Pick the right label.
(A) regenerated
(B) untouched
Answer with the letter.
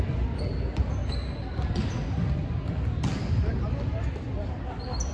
B